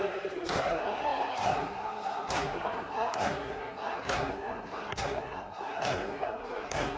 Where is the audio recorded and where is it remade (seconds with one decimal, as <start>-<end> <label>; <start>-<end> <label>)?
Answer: 0.0-7.0 remade